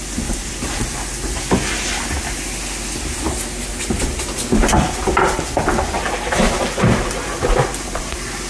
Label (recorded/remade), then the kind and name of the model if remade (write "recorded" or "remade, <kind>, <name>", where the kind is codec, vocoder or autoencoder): recorded